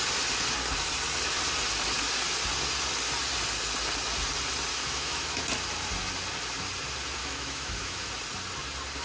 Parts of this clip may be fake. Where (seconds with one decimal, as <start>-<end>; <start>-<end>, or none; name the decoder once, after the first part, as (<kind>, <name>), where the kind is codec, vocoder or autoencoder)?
4.7-5.4 (autoencoder, DAC-VAE); 7.2-8.1